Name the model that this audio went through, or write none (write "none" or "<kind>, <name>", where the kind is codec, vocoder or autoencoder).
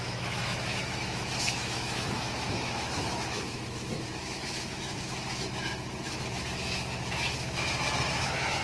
autoencoder, DAC-VAE